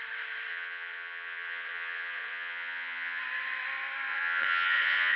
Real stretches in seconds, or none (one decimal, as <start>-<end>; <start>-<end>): 0.0-0.5; 3.2-4.1